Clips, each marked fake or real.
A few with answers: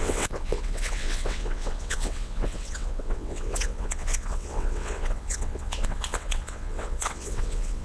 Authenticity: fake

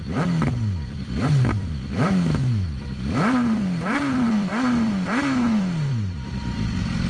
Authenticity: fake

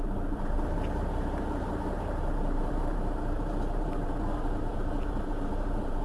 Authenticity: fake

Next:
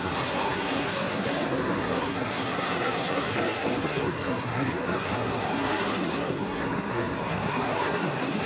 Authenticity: fake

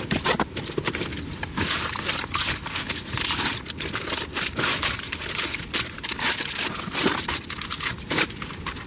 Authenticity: real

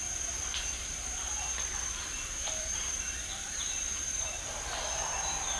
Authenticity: fake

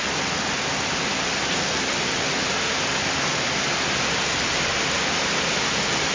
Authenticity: real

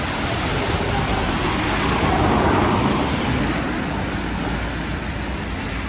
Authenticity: real